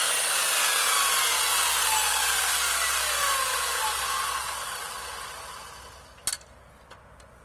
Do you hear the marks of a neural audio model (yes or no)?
no